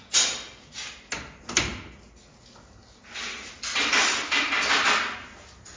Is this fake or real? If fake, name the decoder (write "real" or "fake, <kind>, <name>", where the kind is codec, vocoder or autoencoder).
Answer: real